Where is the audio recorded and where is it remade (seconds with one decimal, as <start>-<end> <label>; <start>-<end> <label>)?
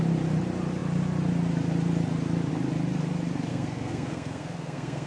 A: 0.0-3.5 recorded; 3.5-5.1 remade